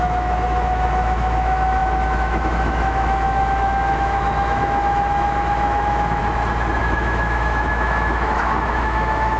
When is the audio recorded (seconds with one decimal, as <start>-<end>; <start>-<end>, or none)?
6.2-6.8